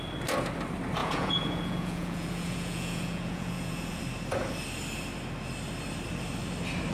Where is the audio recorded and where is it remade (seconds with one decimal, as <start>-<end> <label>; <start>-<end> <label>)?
0.0-1.0 recorded; 1.0-4.0 remade; 4.0-6.9 recorded